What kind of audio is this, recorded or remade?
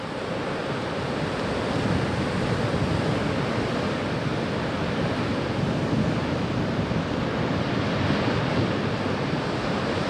recorded